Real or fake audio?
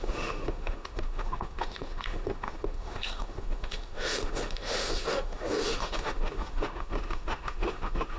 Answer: fake